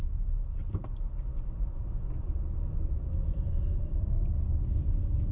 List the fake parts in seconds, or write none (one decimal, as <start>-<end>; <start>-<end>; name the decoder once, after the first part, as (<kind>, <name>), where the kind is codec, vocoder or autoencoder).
none